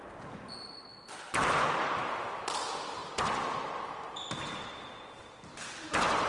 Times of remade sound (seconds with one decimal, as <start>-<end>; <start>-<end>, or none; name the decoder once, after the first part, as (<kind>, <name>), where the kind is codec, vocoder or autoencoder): none